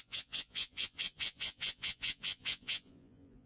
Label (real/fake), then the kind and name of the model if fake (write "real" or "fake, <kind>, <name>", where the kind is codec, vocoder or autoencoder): fake, vocoder, Vocos